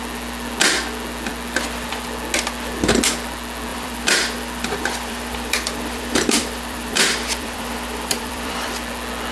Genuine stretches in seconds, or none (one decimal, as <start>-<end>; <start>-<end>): 0.0-3.7; 8.7-9.3